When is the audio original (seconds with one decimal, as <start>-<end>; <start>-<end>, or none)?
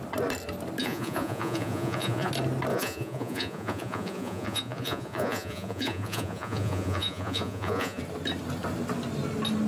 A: 0.0-0.8; 2.3-2.7; 8.0-9.7